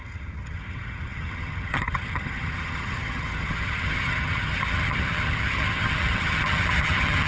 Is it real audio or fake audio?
fake